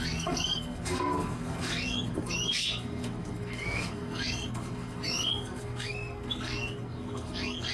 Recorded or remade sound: remade